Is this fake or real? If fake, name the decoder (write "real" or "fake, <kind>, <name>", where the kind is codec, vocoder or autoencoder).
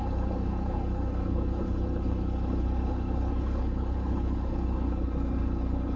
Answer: fake, codec, HILCodec